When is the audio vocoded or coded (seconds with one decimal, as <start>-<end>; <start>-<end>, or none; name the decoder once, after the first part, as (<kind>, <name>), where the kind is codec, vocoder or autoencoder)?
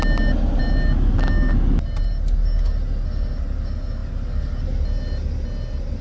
none